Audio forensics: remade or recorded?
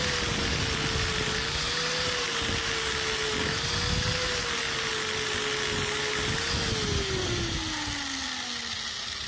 recorded